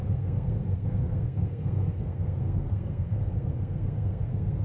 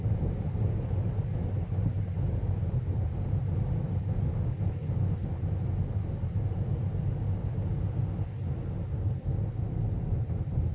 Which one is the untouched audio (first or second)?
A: second